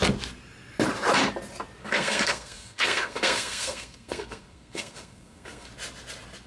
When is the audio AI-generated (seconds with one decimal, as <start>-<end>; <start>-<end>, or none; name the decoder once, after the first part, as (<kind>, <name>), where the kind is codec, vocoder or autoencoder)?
1.8-5.7 (codec, SNAC)